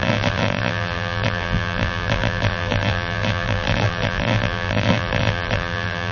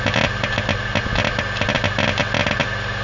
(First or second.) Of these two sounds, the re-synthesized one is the first